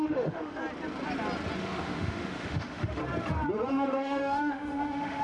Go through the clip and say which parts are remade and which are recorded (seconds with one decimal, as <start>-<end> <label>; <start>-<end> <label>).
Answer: 0.0-0.6 remade; 0.6-1.6 recorded; 1.6-3.0 remade; 3.0-3.7 recorded; 3.7-5.2 remade